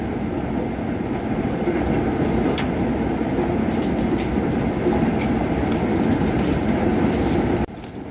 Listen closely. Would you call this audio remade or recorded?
recorded